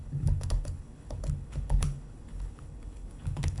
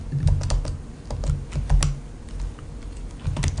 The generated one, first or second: first